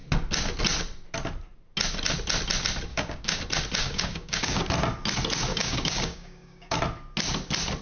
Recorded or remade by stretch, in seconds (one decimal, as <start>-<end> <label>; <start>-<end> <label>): 0.0-2.9 recorded; 2.9-3.4 remade; 3.4-3.8 recorded; 3.8-4.6 remade; 4.6-5.5 recorded; 5.5-6.8 remade; 6.8-7.8 recorded